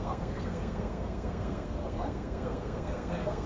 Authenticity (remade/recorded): remade